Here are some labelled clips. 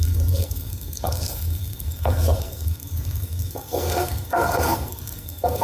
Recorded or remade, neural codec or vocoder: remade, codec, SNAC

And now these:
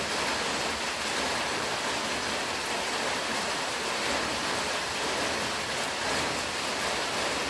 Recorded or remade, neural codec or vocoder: recorded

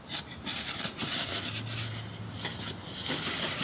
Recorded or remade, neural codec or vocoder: recorded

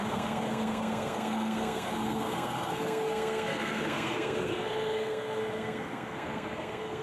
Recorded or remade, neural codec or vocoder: remade, codec, SNAC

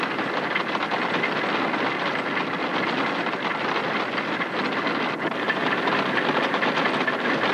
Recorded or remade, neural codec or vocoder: recorded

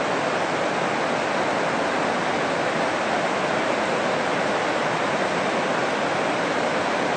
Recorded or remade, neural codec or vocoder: recorded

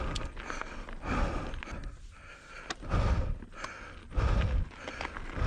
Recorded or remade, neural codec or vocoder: recorded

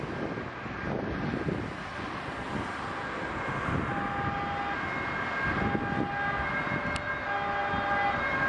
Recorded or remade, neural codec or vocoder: recorded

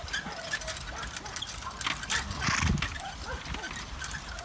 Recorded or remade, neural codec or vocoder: recorded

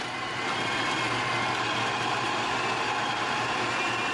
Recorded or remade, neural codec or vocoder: recorded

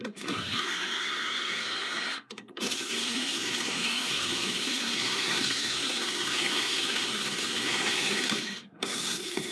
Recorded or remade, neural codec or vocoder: remade, codec, SNAC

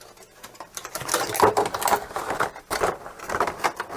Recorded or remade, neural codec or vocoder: recorded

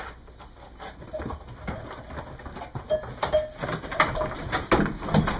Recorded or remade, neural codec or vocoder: recorded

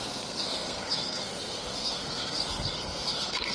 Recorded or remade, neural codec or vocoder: remade, codec, SNAC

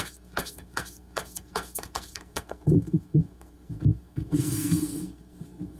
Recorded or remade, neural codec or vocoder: remade, codec, SNAC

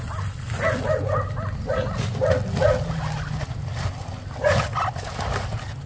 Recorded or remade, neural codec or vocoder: recorded